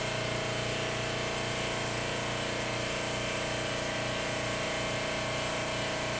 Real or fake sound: real